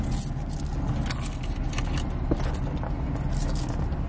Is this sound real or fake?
real